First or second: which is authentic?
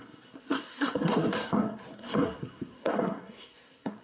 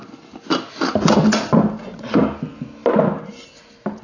second